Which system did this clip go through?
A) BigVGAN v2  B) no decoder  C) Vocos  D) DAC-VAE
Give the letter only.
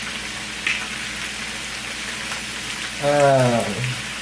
B